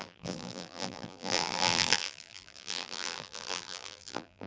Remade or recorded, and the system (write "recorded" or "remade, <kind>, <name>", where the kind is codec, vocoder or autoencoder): remade, vocoder, BigVGAN v2